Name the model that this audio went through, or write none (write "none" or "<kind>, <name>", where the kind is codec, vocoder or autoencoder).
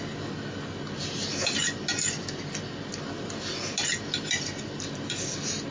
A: none